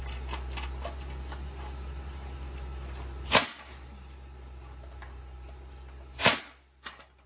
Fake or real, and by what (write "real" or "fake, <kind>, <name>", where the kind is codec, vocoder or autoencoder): real